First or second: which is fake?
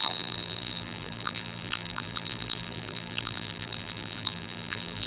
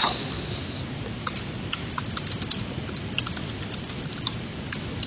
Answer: first